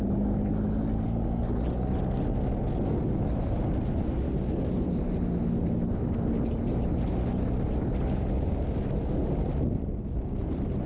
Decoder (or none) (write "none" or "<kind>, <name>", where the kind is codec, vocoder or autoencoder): none